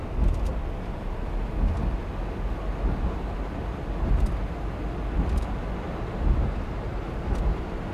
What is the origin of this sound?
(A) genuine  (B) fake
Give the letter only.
A